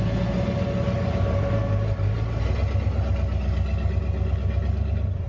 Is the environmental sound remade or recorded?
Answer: recorded